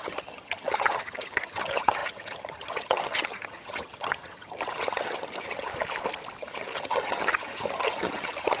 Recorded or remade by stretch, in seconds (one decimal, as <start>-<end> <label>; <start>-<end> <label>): 0.0-5.7 remade; 5.7-6.4 recorded; 6.4-8.6 remade